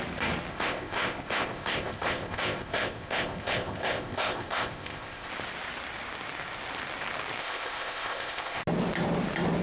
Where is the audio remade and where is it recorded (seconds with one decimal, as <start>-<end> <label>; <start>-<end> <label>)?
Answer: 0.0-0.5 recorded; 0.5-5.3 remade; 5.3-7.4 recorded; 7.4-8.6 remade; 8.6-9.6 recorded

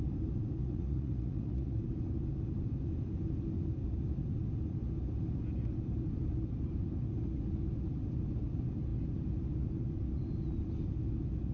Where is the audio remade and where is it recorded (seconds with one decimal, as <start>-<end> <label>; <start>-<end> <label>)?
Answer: 0.0-0.6 recorded; 0.6-1.8 remade; 1.8-11.5 recorded

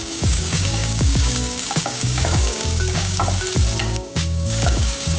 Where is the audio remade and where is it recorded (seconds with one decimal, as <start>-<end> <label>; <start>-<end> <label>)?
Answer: 0.0-3.2 remade; 3.2-3.8 recorded; 3.8-5.2 remade

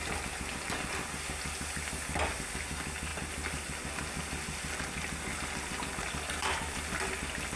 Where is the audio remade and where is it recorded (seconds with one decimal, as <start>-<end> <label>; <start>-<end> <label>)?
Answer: 0.0-7.6 recorded

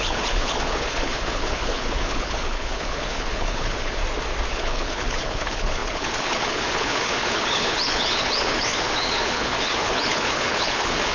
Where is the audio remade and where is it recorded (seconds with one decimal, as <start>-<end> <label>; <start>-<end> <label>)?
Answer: 0.0-4.0 remade; 4.0-4.5 recorded; 4.5-11.1 remade